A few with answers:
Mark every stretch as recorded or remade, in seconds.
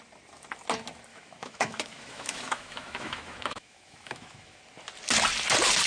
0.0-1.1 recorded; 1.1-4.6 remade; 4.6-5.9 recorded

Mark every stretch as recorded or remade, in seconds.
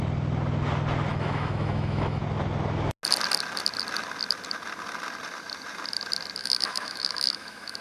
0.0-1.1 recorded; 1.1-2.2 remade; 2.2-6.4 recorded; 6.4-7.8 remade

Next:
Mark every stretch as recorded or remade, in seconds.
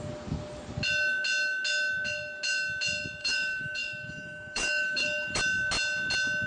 0.0-3.2 recorded; 3.2-5.4 remade; 5.4-6.5 recorded